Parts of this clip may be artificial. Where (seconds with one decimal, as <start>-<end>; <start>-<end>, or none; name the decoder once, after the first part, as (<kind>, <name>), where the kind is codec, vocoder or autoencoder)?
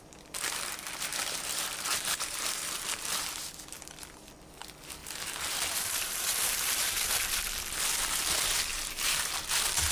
1.1-3.3 (vocoder, BigVGAN v2); 5.0-7.2; 8.7-9.3